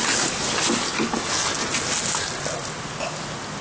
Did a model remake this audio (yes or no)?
no